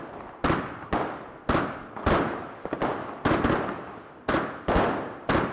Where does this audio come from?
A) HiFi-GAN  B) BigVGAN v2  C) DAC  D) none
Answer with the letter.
D